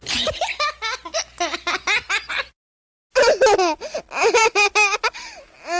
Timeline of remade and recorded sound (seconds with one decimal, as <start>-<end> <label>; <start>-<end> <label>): 0.0-5.8 recorded